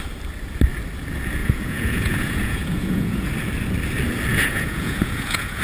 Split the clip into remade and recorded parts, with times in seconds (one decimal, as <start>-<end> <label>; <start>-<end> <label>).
0.0-1.4 recorded; 1.4-3.3 remade; 3.3-4.3 recorded; 4.3-5.6 remade